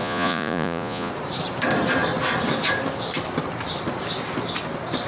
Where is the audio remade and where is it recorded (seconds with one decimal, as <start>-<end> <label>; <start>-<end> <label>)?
0.0-1.1 remade; 1.1-5.1 recorded